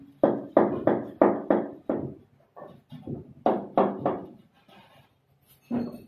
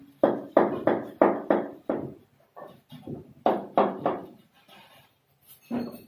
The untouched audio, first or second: first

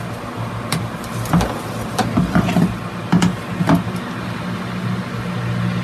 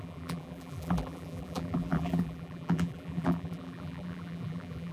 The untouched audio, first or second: first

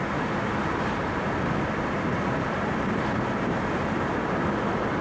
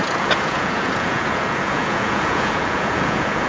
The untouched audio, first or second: first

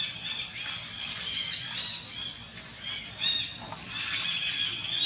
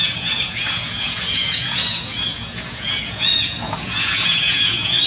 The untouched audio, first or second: first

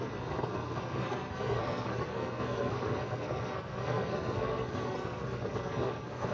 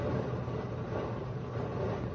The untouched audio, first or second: second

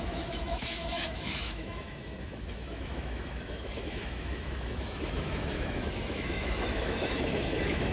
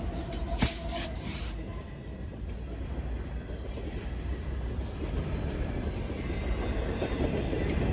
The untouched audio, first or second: second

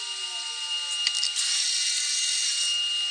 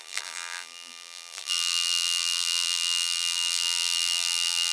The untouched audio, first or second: first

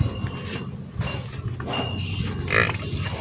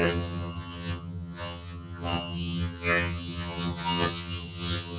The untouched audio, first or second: first